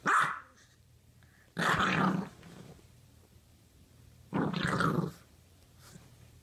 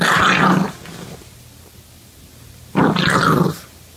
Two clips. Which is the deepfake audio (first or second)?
first